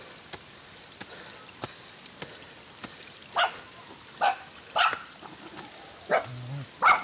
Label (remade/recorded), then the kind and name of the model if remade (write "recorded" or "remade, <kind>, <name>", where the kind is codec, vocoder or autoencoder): recorded